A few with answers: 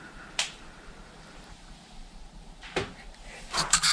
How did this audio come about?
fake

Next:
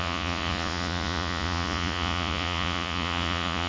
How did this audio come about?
fake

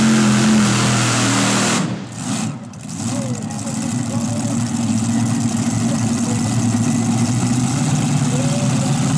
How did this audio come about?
real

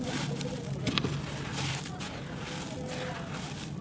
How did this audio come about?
real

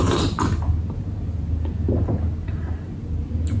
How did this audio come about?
real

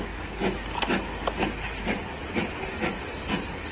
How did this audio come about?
real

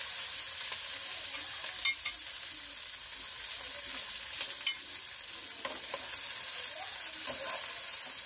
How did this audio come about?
real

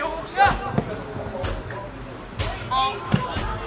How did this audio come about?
real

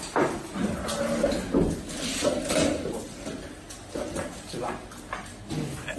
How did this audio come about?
real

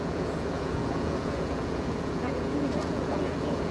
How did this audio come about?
fake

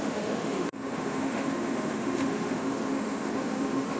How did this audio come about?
fake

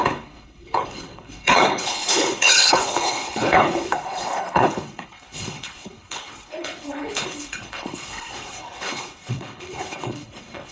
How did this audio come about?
fake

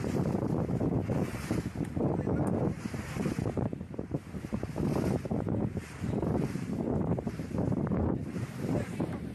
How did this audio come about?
fake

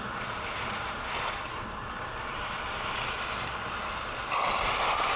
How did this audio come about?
real